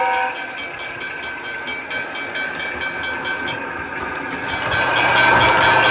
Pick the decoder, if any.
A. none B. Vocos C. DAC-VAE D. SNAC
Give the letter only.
A